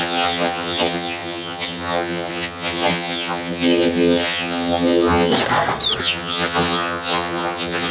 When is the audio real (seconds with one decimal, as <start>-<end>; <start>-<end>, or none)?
5.3-6.0